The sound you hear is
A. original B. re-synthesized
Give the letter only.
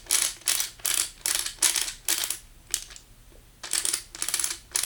A